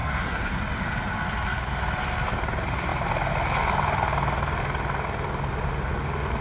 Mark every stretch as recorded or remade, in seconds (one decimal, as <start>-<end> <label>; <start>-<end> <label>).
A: 0.0-0.6 remade; 0.6-6.4 recorded